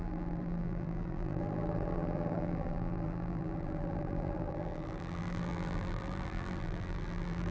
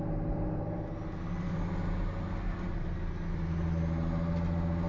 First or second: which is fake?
first